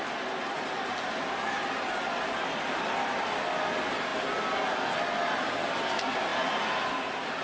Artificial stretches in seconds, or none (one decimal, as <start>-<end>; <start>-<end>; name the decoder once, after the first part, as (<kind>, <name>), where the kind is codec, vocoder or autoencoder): none